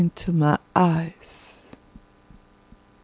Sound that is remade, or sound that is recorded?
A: recorded